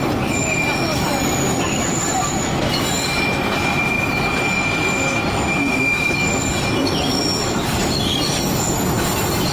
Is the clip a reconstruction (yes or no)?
no